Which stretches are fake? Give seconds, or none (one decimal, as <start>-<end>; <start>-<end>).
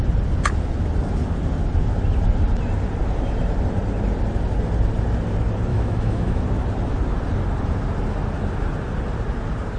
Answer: 5.7-6.4